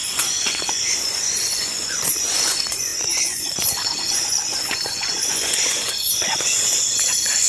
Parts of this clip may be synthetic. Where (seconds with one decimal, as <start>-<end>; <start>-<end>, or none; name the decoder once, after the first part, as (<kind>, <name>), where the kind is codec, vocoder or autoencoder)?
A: 0.0-7.5 (vocoder, Vocos)